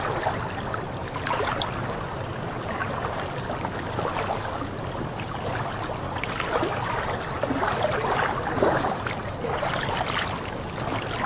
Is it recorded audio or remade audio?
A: recorded